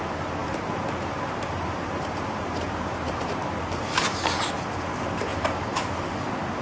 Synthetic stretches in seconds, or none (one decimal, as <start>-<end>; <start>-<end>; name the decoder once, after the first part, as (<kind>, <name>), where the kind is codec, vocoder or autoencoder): 0.4-4.4 (vocoder, BigVGAN v2); 5.3-5.8